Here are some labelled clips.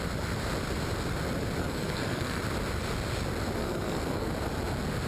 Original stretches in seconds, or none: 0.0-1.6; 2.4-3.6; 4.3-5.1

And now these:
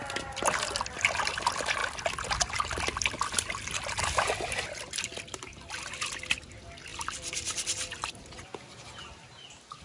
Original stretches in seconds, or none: 0.0-9.8

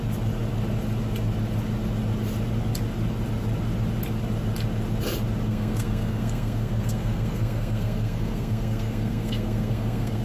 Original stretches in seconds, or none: 0.0-5.5

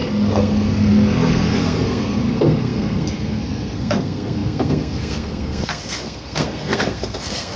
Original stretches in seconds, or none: none